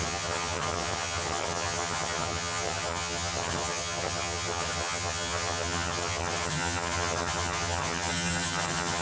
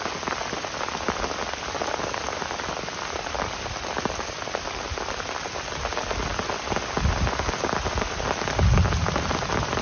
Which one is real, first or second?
second